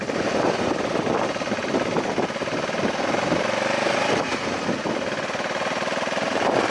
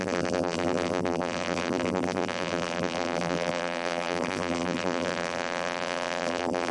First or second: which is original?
first